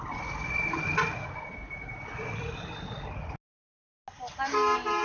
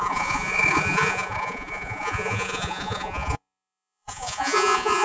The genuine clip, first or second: first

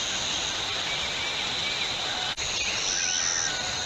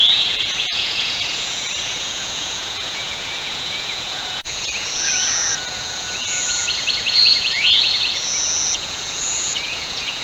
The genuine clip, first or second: first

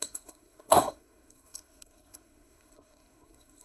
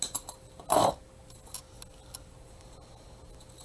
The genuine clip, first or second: second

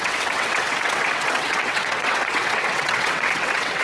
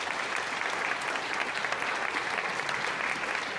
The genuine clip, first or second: second